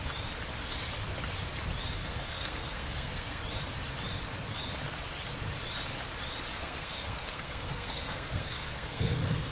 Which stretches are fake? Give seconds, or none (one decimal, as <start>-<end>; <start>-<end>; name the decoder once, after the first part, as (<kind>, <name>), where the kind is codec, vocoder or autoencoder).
2.0-3.4 (codec, SNAC); 6.5-9.5